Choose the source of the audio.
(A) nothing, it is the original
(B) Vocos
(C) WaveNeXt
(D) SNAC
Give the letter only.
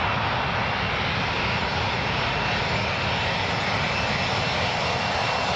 A